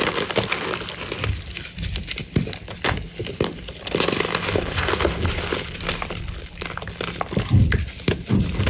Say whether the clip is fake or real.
real